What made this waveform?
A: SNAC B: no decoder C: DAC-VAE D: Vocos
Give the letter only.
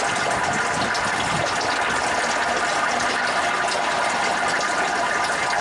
B